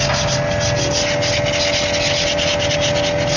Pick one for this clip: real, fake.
real